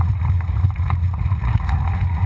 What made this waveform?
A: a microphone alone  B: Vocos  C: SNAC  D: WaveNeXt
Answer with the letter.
B